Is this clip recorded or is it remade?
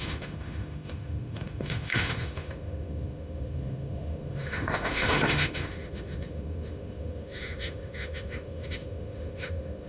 remade